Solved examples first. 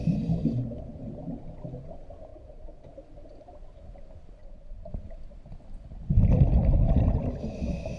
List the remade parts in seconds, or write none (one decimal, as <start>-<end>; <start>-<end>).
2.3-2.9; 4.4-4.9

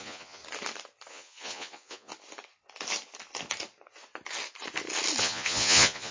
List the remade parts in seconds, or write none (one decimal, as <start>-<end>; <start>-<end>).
0.0-0.4; 1.1-2.1; 5.2-6.1

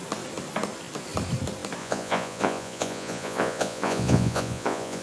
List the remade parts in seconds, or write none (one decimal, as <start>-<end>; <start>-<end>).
1.8-5.0